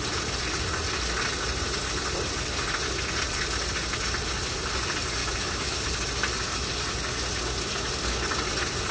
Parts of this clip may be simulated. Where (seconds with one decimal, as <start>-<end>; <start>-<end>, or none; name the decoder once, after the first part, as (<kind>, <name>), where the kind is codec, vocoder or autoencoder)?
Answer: 5.2-5.8 (autoencoder, DAC-VAE)